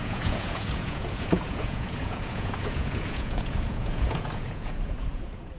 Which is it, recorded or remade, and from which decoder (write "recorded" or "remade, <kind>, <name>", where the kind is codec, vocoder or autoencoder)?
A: remade, vocoder, Vocos